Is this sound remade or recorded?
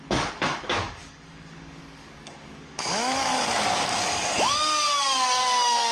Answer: remade